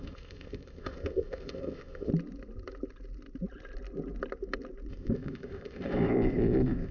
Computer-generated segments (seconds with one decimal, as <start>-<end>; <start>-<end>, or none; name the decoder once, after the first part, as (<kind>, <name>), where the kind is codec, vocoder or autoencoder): 0.0-2.1 (codec, ZipCodec); 4.9-6.9